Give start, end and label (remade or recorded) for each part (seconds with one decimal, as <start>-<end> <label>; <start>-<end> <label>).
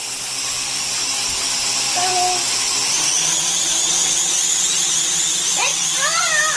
0.0-6.6 recorded